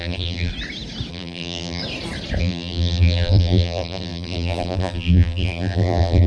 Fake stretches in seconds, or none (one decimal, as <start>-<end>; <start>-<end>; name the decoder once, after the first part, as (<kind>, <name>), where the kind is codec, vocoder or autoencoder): 0.0-0.5 (vocoder, BigVGAN v2); 1.1-1.8; 2.4-6.3